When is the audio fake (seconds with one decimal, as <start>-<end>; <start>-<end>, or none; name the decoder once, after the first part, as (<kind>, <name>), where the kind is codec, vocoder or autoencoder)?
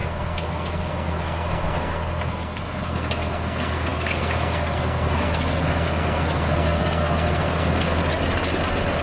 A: 0.0-8.0 (codec, SNAC)